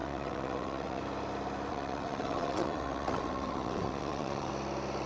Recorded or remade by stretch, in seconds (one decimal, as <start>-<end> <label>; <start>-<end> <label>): 0.0-1.0 remade; 1.0-1.7 recorded; 1.7-4.5 remade; 4.5-5.1 recorded